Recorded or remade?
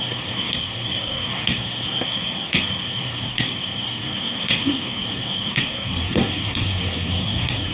remade